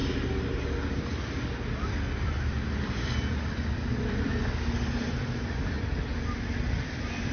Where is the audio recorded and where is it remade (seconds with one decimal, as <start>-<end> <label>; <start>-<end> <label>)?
0.0-1.9 recorded; 1.9-4.3 remade; 4.3-6.1 recorded; 6.1-7.3 remade